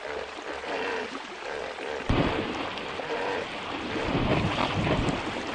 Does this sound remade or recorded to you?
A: remade